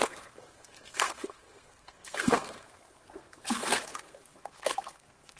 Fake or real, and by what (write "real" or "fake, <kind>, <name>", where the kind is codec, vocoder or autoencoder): fake, codec, SNAC